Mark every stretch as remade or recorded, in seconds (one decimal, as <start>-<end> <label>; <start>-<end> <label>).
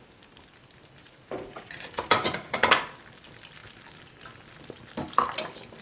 0.0-1.0 recorded; 1.0-2.7 remade; 2.7-5.8 recorded